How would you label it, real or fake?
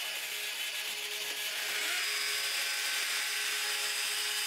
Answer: real